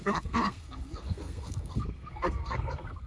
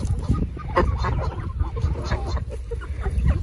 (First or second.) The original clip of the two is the second